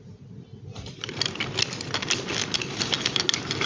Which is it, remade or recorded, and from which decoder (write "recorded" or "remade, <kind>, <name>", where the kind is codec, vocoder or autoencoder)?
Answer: recorded